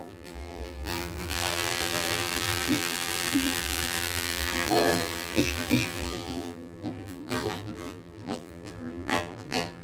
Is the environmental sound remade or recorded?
remade